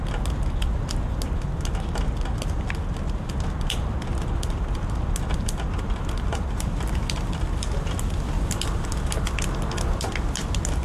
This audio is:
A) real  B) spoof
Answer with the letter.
A